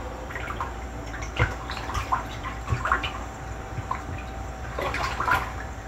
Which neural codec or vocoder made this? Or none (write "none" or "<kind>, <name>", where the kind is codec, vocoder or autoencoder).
vocoder, BigVGAN v2